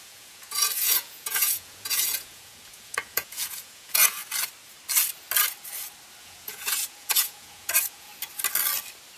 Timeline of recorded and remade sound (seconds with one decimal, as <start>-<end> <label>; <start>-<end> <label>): 0.0-4.2 remade; 4.2-6.2 recorded; 6.2-8.1 remade; 8.1-9.2 recorded